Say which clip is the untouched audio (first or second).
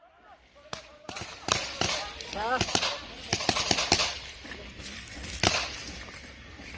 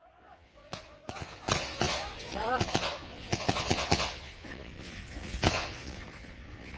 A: first